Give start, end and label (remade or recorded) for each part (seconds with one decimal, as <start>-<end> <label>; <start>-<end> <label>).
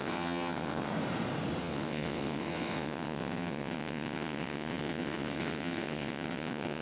0.0-0.9 remade; 0.9-1.6 recorded; 1.6-6.8 remade